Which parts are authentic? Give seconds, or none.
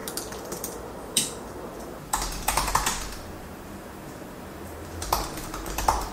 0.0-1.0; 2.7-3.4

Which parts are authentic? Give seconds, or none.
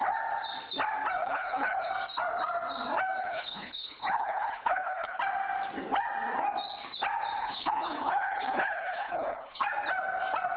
0.0-1.2; 1.9-3.2; 5.2-7.4; 9.6-10.6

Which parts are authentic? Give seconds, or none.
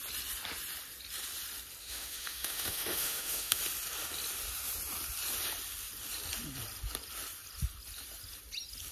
0.0-1.8; 3.6-8.9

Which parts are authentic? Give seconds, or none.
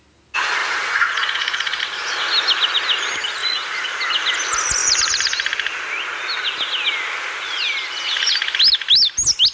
0.0-0.6; 1.8-3.4; 4.0-9.5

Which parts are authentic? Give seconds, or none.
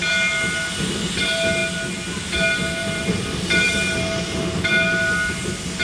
0.0-2.8; 3.7-5.8